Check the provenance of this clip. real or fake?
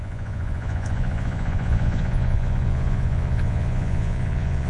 fake